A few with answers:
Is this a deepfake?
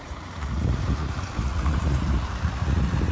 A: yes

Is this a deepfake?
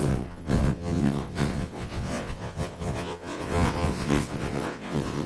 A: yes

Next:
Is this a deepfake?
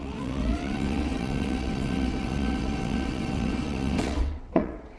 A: yes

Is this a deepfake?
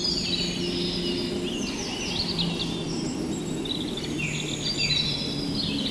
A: no